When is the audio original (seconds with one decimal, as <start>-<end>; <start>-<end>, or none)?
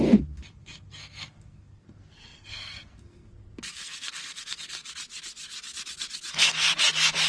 4.8-6.3; 6.7-7.3